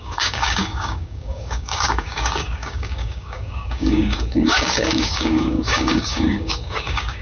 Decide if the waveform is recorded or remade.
remade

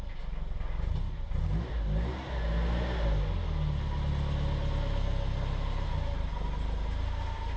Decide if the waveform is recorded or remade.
recorded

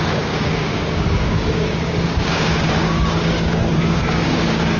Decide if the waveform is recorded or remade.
remade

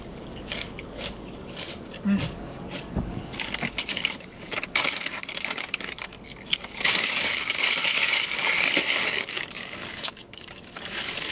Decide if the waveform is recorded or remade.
remade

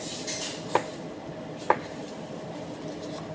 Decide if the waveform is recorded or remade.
recorded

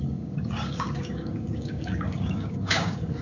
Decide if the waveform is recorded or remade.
remade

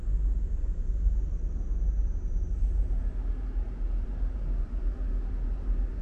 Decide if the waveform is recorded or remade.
recorded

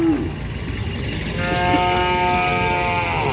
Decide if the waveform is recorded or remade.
recorded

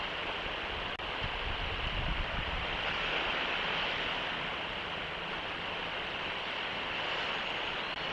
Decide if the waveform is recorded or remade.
recorded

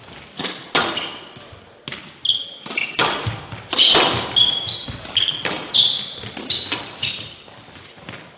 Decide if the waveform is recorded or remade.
recorded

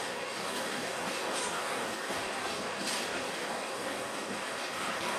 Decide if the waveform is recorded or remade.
remade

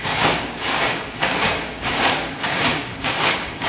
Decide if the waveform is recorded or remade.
remade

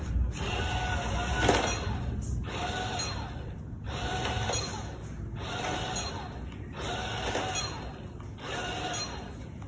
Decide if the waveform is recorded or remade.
recorded